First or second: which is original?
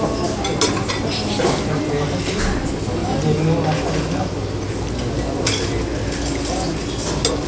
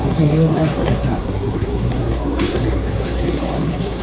first